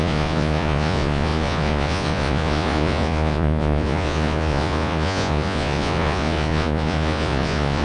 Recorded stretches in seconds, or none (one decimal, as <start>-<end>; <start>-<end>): none